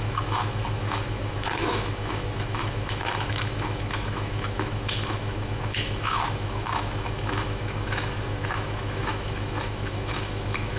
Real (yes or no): no